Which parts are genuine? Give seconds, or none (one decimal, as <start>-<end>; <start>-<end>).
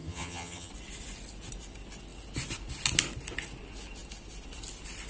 0.7-5.1